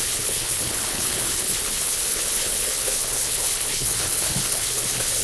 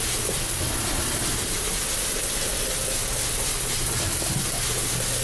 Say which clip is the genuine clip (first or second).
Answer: second